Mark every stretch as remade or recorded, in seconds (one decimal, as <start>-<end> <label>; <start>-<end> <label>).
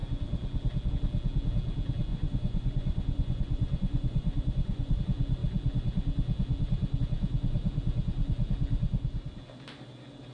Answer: 0.0-2.1 recorded; 2.1-5.0 remade; 5.0-10.3 recorded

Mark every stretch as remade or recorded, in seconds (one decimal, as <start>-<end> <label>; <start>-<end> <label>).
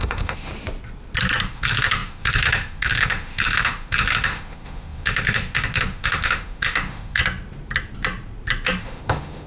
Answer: 0.0-0.5 remade; 0.5-1.4 recorded; 1.4-7.2 remade; 7.2-8.8 recorded; 8.8-9.5 remade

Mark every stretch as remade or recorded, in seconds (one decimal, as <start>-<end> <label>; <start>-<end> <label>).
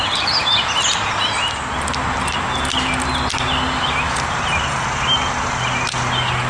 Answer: 0.0-6.5 recorded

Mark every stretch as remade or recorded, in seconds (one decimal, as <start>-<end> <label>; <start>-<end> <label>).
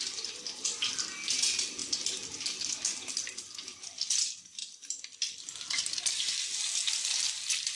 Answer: 0.0-7.8 recorded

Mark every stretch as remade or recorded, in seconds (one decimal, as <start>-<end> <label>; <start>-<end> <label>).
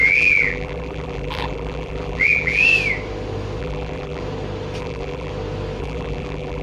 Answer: 0.0-2.6 remade; 2.6-3.6 recorded; 3.6-4.2 remade; 4.2-4.8 recorded; 4.8-5.3 remade; 5.3-5.8 recorded; 5.8-6.6 remade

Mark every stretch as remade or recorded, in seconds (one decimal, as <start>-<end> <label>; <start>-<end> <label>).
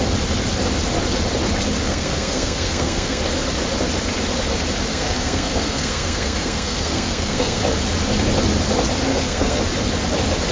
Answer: 0.0-1.8 recorded; 1.8-3.2 remade; 3.2-4.9 recorded; 4.9-7.6 remade; 7.6-9.1 recorded; 9.1-9.6 remade; 9.6-10.5 recorded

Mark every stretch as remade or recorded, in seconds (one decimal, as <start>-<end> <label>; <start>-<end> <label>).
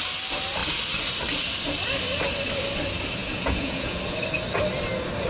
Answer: 0.0-3.2 recorded; 3.2-4.0 remade; 4.0-5.3 recorded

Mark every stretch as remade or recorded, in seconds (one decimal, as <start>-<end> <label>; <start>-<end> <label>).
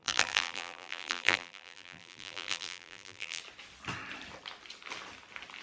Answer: 0.0-3.4 remade; 3.4-5.6 recorded